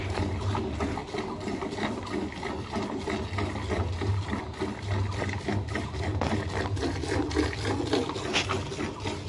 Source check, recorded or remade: recorded